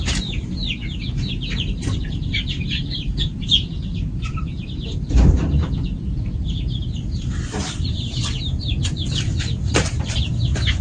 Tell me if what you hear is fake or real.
fake